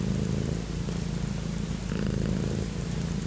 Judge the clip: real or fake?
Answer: real